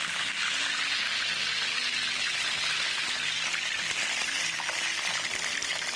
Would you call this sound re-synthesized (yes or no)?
no